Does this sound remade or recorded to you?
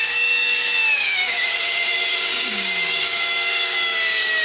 remade